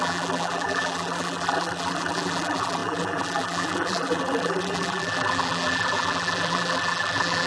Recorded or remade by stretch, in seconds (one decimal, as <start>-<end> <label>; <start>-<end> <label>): 0.0-7.5 remade